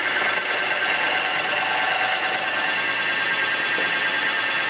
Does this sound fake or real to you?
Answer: real